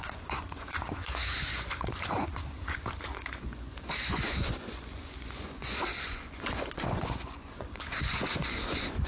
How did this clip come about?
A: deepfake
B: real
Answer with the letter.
A